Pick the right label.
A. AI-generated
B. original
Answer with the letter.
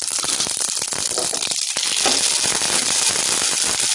A